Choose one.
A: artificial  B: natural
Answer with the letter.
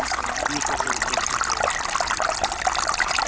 B